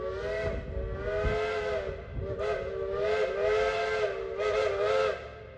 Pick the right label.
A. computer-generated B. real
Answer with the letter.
B